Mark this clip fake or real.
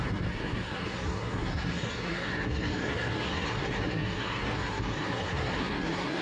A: fake